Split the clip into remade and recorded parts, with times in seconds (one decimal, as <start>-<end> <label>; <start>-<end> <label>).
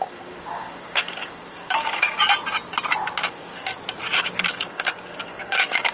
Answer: 0.0-2.2 remade; 2.2-3.3 recorded; 3.3-3.7 remade; 3.7-4.5 recorded; 4.5-5.9 remade